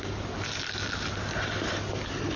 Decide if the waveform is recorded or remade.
recorded